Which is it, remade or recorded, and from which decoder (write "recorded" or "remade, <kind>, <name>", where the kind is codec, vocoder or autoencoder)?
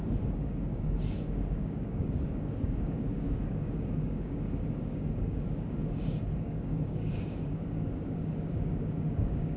remade, codec, DAC